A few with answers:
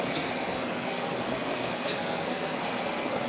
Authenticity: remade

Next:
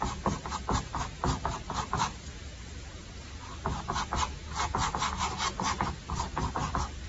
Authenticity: recorded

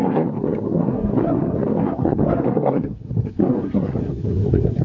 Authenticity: remade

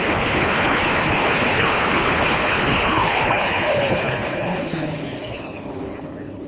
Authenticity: remade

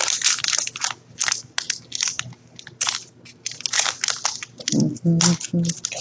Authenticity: recorded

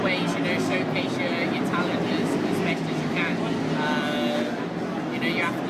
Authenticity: recorded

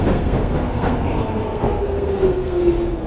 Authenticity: remade